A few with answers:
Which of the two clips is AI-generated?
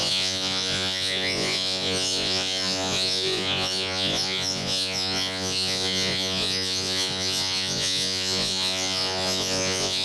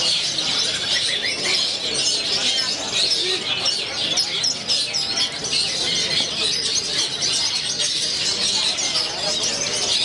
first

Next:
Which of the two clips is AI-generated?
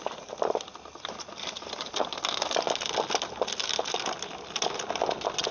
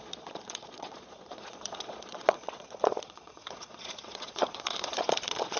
second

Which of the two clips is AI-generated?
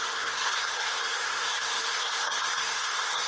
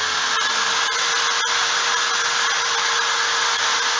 first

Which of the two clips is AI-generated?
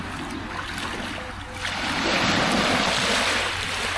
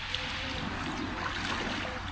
second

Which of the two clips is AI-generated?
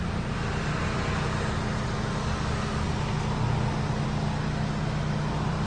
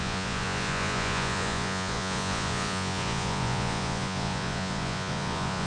second